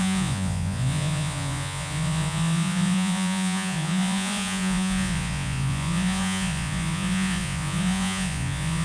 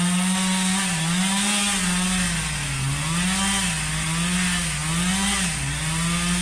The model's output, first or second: first